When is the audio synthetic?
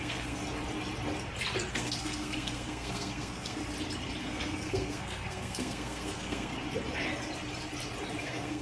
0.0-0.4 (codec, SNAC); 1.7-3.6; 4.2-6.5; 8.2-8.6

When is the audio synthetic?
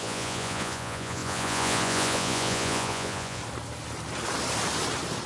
0.0-3.4 (vocoder, Vocos)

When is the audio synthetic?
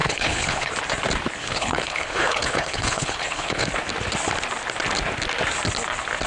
0.0-0.7 (codec, HILCodec); 1.4-3.7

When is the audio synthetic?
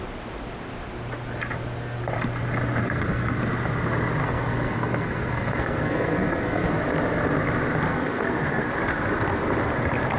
2.8-3.4 (codec, SNAC); 4.2-6.8; 7.9-8.7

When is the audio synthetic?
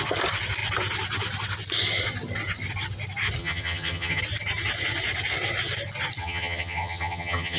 3.4-4.2 (vocoder, HiFi-GAN); 6.2-7.6